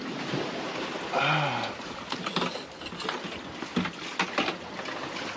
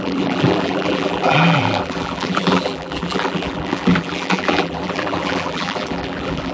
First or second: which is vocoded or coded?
second